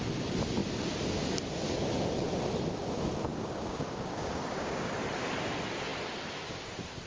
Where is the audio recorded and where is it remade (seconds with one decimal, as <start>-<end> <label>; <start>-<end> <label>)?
0.0-3.3 recorded; 3.3-4.9 remade; 4.9-7.1 recorded